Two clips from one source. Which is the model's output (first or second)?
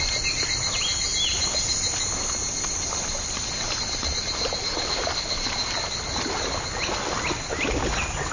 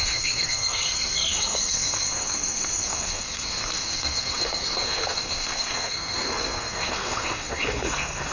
second